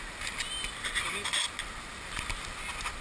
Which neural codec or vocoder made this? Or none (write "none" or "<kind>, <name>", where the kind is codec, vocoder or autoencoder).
none